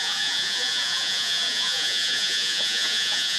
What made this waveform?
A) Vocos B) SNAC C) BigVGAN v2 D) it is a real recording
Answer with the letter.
A